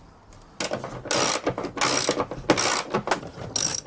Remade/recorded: recorded